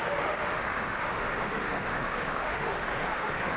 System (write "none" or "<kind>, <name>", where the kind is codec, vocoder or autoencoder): autoencoder, DAC-VAE